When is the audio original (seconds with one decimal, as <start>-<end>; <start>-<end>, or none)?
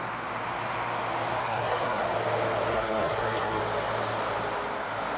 0.0-1.4; 2.0-2.7; 3.6-5.2